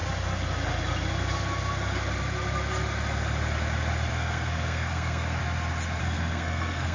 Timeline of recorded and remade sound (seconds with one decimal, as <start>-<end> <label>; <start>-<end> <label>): 0.0-4.1 recorded; 4.1-5.4 remade; 5.4-6.0 recorded; 6.0-6.9 remade